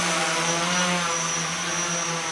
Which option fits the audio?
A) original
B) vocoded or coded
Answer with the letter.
A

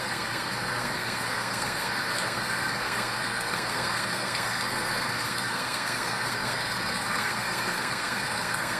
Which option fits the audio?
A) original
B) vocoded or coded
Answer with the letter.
B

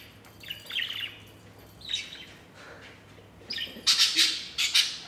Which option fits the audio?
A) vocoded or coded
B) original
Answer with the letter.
B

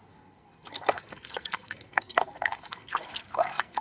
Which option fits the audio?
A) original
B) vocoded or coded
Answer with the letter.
B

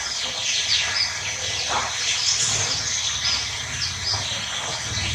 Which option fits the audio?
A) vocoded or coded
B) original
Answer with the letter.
B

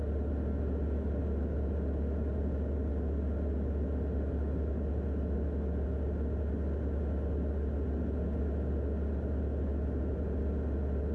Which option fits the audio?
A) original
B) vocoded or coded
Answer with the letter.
A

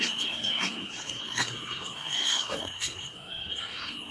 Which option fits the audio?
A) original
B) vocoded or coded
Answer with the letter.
B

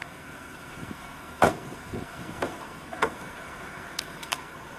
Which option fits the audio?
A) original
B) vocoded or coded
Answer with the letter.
B